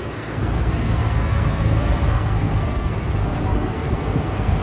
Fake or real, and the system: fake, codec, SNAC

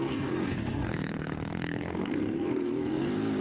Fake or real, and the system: fake, codec, SNAC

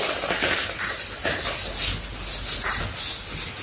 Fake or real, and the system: real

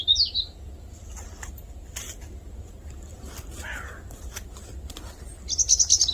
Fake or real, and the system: real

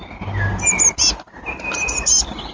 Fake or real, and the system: real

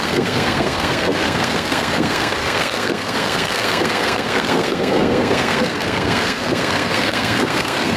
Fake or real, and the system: fake, codec, SNAC